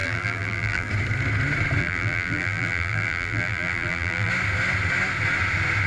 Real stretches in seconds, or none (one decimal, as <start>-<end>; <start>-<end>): 0.9-1.8; 4.3-5.9